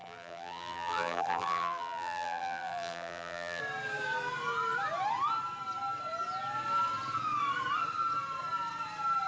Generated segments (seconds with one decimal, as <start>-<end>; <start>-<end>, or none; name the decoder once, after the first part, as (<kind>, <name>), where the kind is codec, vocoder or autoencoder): 0.0-3.6 (vocoder, BigVGAN v2)